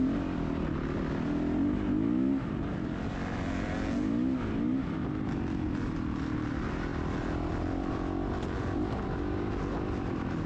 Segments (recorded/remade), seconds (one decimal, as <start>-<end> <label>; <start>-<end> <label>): 0.0-10.5 recorded